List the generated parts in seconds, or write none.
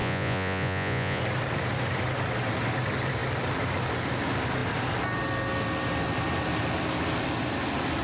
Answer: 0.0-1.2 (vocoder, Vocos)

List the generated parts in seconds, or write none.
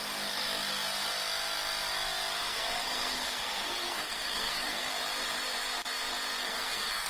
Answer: 2.4-4.9 (codec, SNAC); 6.4-7.1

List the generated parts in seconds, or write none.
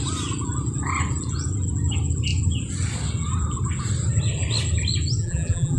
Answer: 5.2-5.8 (vocoder, BigVGAN v2)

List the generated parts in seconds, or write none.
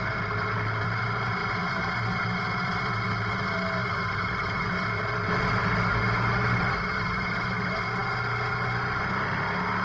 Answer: none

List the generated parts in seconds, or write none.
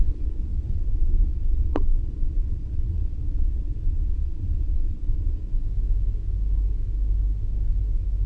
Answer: 0.0-5.6 (vocoder, Vocos)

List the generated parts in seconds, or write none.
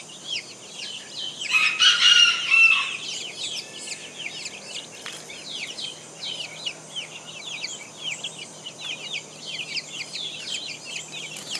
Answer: none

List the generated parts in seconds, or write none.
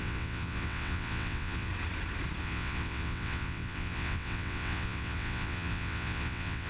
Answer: 0.0-1.7 (vocoder, WaveNeXt); 2.4-6.7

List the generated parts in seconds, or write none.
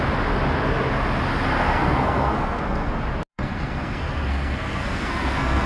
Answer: 1.5-2.9 (codec, SNAC); 3.3-5.7